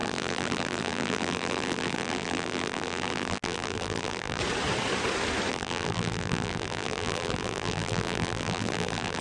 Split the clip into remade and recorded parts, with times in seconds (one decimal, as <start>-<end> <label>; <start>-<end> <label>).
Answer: 0.0-4.4 remade; 4.4-5.5 recorded; 5.5-9.2 remade